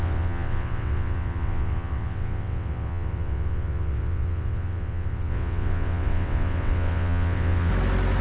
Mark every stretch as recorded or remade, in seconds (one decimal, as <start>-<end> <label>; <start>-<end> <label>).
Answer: 0.0-7.7 remade; 7.7-8.2 recorded